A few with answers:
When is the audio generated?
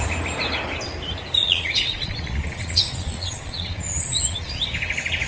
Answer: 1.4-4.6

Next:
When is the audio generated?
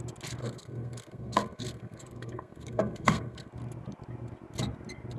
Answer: 0.4-3.5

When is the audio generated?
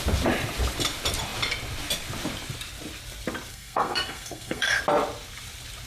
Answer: 3.5-4.8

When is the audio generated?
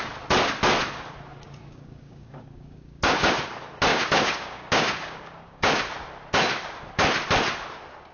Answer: 1.3-3.3; 3.9-5.8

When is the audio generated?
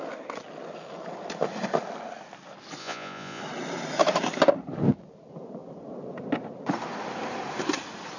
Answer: 2.8-3.4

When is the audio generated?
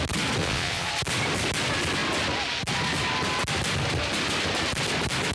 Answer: 0.4-0.9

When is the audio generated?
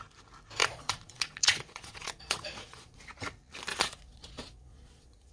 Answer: 0.6-3.0; 3.7-5.3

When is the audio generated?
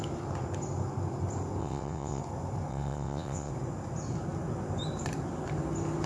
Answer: 1.6-2.2; 2.7-3.5